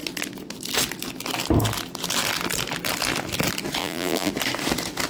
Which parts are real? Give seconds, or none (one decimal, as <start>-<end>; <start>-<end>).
0.0-3.8; 4.3-5.1